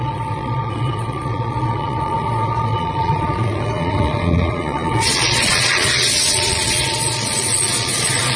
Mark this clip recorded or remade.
remade